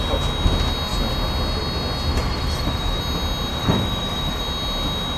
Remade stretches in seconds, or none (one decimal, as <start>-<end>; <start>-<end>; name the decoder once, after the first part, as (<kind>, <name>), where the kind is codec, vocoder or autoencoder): 2.1-3.0 (autoencoder, DAC-VAE); 3.5-4.4